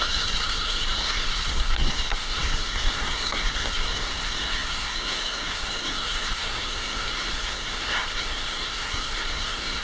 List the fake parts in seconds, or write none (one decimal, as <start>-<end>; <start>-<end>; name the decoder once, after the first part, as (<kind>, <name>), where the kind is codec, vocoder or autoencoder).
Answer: 0.0-9.8 (codec, SNAC)